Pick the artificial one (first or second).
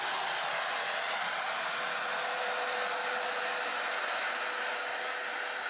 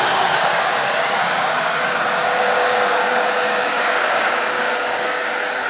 second